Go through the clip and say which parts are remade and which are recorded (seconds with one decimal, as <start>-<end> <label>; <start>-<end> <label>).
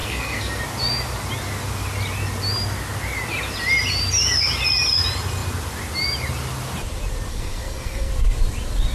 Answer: 0.0-0.6 remade; 0.6-7.3 recorded; 7.3-8.1 remade; 8.1-8.9 recorded